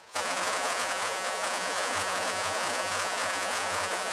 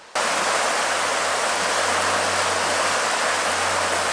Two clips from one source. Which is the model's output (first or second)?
first